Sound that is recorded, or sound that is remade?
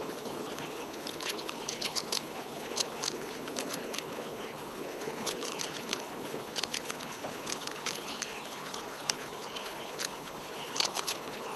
remade